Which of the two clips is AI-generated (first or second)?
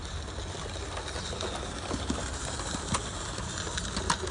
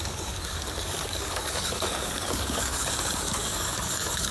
second